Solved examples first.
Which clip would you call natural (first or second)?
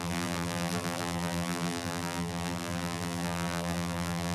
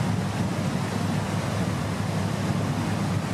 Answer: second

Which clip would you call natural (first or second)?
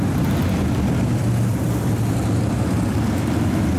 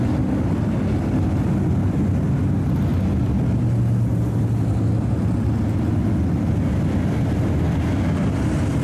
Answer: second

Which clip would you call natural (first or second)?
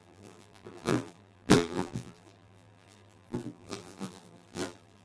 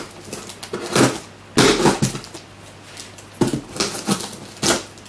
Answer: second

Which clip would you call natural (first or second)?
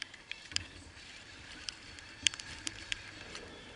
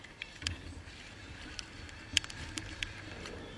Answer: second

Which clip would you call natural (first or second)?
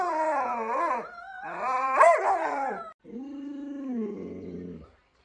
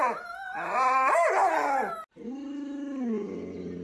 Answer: second